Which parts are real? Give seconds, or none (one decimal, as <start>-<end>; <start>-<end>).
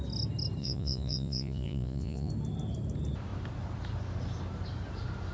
0.0-0.6; 2.3-5.3